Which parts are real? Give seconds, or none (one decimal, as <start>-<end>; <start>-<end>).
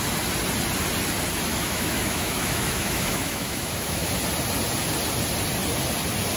0.0-1.5; 4.1-6.4